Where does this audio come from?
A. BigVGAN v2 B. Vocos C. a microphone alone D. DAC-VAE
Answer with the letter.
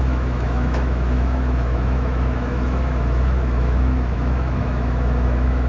D